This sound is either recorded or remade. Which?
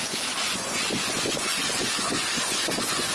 remade